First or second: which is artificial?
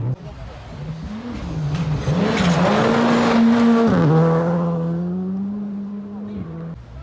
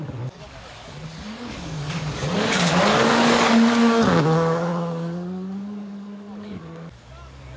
second